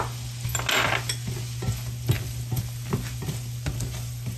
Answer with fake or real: real